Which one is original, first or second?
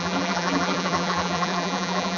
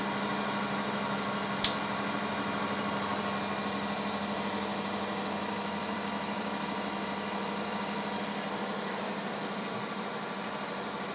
second